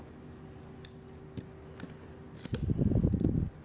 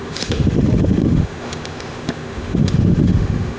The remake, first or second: second